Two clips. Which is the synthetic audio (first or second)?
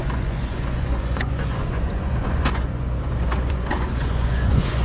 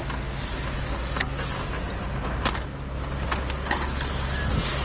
first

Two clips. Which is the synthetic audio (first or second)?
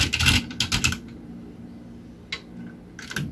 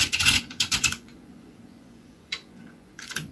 second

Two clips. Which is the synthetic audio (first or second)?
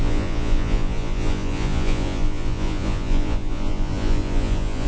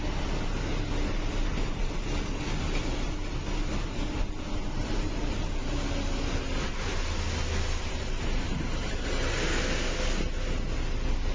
first